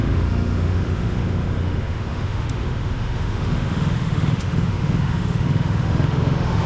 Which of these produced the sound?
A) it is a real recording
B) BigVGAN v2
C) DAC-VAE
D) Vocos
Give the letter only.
C